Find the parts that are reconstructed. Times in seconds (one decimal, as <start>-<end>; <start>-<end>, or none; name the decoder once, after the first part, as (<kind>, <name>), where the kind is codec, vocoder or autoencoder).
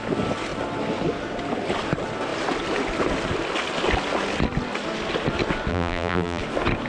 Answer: 5.7-6.4 (vocoder, BigVGAN v2)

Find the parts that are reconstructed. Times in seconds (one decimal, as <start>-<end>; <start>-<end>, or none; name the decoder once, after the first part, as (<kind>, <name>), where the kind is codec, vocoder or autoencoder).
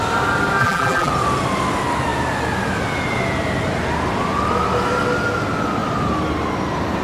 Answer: 0.6-1.1 (vocoder, BigVGAN v2)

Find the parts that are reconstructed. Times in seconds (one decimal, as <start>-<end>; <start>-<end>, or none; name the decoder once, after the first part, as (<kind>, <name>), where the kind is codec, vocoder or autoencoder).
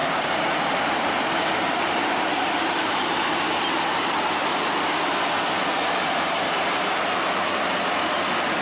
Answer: 0.0-3.8 (vocoder, BigVGAN v2)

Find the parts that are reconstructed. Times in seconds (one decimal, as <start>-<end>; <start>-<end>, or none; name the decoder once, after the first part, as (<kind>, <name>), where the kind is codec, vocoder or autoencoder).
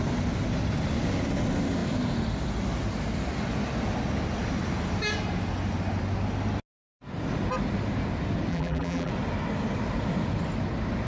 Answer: 8.5-9.1 (vocoder, BigVGAN v2)